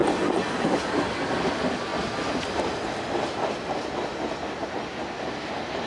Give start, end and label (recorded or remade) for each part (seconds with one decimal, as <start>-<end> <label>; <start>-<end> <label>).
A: 0.0-5.9 recorded